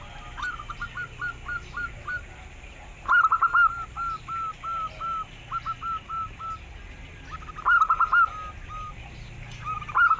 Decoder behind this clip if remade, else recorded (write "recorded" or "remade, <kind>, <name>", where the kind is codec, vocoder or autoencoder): recorded